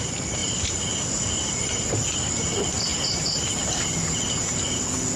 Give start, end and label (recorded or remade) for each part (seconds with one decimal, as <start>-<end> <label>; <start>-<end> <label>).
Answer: 0.0-0.4 recorded; 0.4-2.4 remade; 2.4-2.9 recorded; 2.9-4.6 remade; 4.6-5.2 recorded